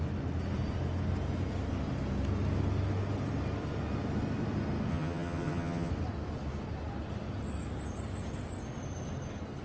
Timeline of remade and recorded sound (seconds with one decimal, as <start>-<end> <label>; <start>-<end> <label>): 0.0-4.9 recorded; 4.9-5.9 remade; 5.9-9.6 recorded